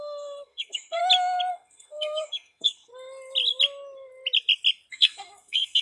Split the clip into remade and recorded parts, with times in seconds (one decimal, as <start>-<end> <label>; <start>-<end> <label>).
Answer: 0.0-1.0 remade; 1.0-1.5 recorded; 1.5-2.9 remade; 2.9-4.9 recorded; 4.9-5.8 remade